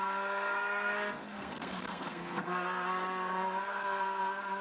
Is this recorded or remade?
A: remade